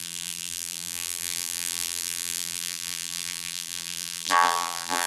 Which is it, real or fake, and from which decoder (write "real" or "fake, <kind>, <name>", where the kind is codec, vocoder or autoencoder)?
fake, vocoder, BigVGAN v2